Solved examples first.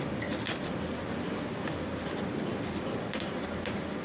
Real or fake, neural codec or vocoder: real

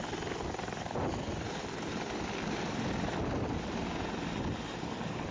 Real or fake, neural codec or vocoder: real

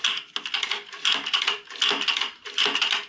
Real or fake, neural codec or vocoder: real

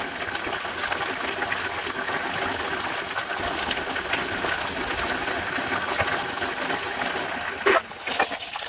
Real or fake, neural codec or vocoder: real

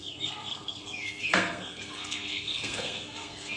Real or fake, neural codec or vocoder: fake, codec, SNAC